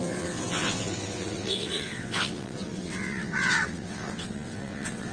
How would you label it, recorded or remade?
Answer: remade